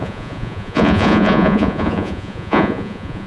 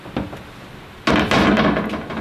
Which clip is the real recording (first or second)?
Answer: second